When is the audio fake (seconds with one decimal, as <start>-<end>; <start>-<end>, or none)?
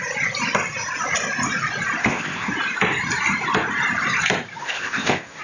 2.0-2.5; 4.6-5.4